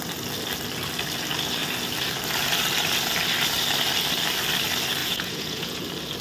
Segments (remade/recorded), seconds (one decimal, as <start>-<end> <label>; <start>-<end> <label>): 0.0-5.0 recorded; 5.0-5.8 remade; 5.8-6.2 recorded